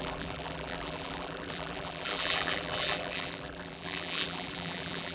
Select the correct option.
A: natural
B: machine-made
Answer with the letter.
B